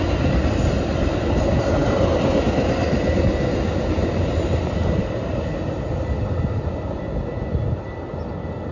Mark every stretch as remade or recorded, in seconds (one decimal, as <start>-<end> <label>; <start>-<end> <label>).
0.0-8.7 recorded